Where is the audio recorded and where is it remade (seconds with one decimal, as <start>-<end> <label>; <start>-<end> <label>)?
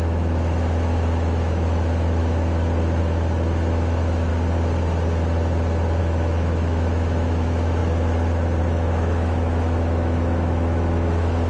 0.0-2.2 remade; 2.2-3.0 recorded; 3.0-4.3 remade; 4.3-6.0 recorded; 6.0-7.8 remade; 7.8-8.6 recorded; 8.6-11.5 remade